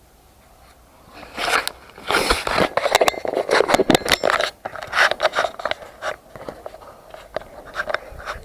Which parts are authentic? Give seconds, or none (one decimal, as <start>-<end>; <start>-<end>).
0.0-8.4